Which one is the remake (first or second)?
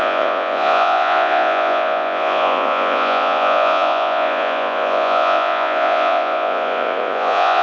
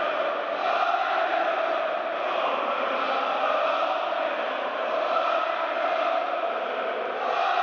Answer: first